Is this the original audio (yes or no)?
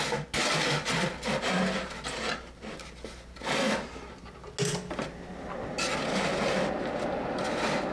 yes